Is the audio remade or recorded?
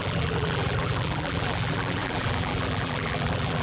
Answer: remade